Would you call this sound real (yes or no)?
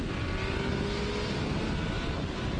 yes